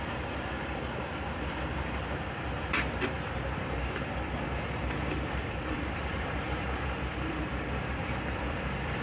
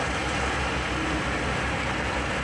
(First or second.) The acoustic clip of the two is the second